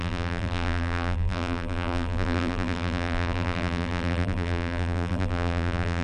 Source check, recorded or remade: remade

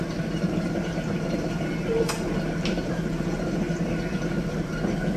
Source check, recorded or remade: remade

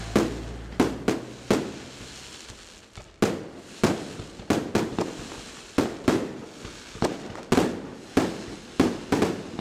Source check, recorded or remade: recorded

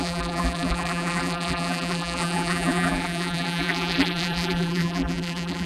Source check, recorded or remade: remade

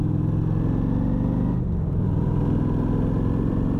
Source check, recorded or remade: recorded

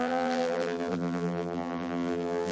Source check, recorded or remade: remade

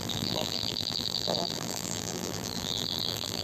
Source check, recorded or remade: remade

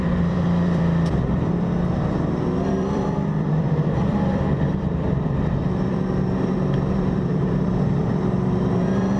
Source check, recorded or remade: remade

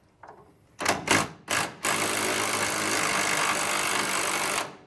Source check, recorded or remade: recorded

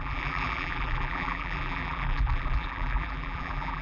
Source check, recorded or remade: remade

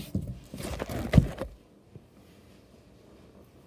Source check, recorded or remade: remade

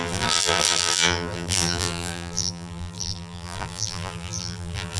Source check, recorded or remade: remade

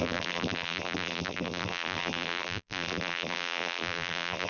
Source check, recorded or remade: remade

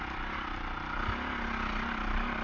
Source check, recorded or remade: recorded